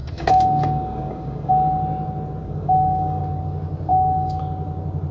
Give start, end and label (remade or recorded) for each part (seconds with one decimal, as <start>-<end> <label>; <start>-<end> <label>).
0.0-1.5 remade; 1.5-2.4 recorded; 2.4-3.2 remade; 3.2-3.9 recorded; 3.9-4.4 remade; 4.4-5.1 recorded